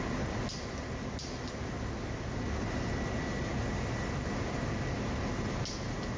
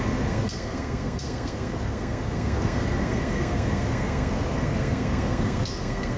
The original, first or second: first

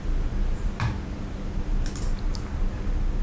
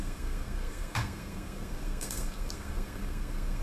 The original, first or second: first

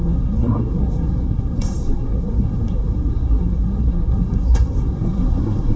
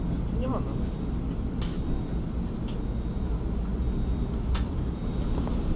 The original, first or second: second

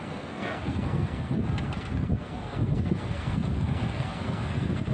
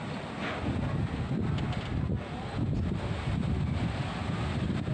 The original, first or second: second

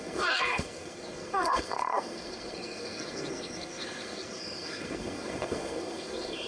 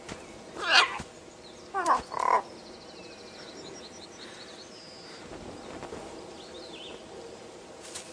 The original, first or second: second